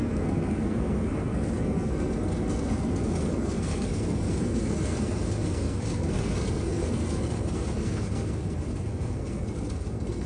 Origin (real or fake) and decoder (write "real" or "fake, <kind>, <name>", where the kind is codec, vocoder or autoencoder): fake, codec, SNAC